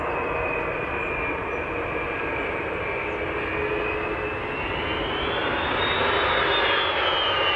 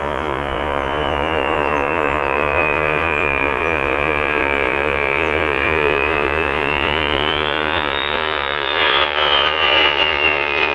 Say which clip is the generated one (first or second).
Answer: second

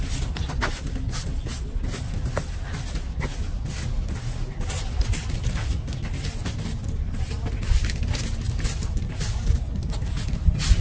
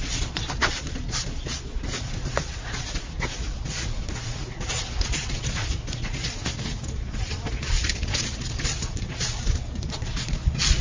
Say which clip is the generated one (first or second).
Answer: second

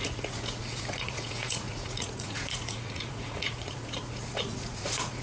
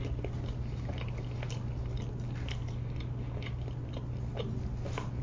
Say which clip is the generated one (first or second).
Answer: first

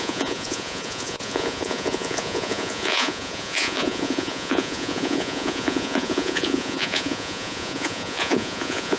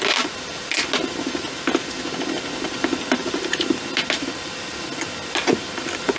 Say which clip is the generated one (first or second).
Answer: first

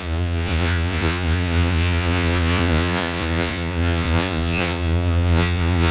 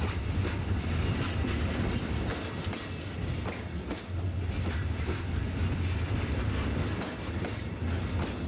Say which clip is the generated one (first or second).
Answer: first